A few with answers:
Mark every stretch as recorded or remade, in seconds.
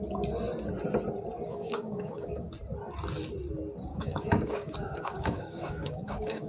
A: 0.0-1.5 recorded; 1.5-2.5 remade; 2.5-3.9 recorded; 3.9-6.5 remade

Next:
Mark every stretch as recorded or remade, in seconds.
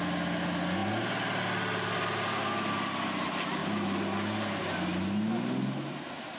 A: 0.0-6.4 recorded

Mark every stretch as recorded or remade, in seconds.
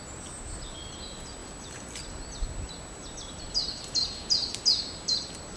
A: 0.0-3.6 recorded; 3.6-4.6 remade; 4.6-5.6 recorded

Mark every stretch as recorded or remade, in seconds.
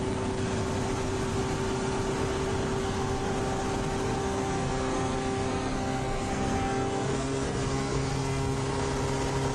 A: 0.0-2.8 recorded; 2.8-3.3 remade; 3.3-4.2 recorded; 4.2-8.8 remade; 8.8-9.5 recorded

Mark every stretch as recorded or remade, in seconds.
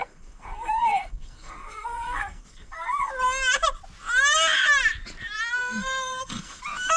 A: 0.0-3.1 remade; 3.1-5.6 recorded; 5.6-6.6 remade; 6.6-7.0 recorded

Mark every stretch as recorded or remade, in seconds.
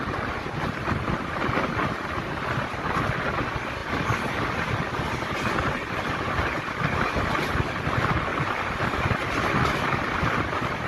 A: 0.0-10.9 recorded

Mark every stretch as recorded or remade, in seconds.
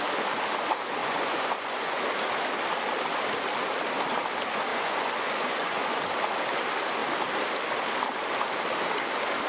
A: 0.0-1.0 recorded; 1.0-2.0 remade; 2.0-4.7 recorded; 4.7-6.0 remade; 6.0-9.5 recorded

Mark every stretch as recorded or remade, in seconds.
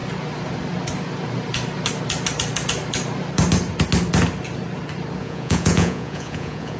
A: 0.0-5.2 recorded; 5.2-6.8 remade